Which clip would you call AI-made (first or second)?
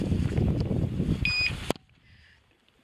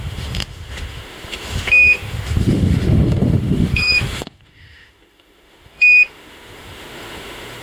second